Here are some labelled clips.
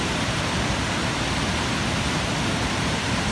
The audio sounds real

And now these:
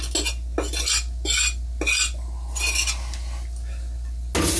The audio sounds real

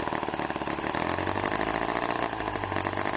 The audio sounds real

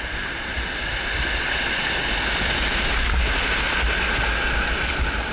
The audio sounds real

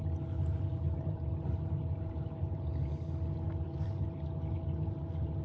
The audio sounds real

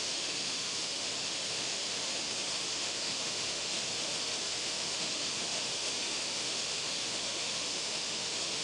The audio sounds fake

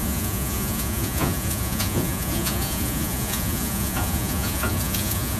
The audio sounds fake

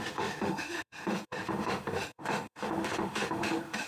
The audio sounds fake